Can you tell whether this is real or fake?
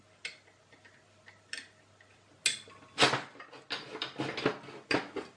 real